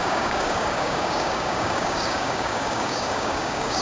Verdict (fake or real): fake